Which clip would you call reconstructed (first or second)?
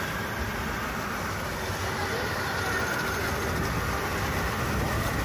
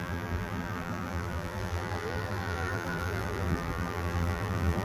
second